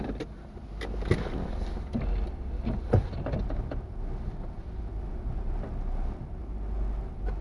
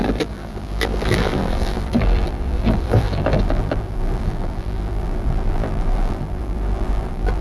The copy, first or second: second